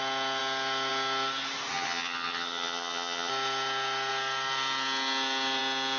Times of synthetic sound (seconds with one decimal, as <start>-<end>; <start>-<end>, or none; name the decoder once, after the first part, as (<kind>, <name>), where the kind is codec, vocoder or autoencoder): 1.7-3.3 (vocoder, HiFi-GAN)